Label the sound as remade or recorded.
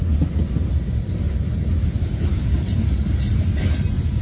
recorded